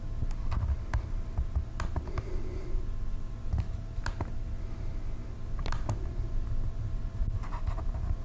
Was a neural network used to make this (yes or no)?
no